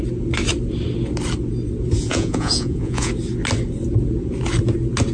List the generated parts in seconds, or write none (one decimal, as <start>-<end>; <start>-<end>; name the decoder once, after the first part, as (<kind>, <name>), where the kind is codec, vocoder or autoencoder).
2.0-3.1 (vocoder, Vocos)